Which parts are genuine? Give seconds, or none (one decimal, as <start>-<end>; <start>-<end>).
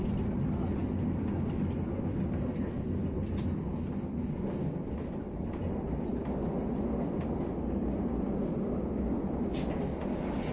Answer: 0.0-10.5